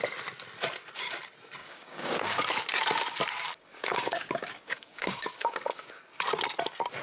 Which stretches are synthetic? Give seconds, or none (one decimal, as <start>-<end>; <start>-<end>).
1.6-2.4; 3.5-6.0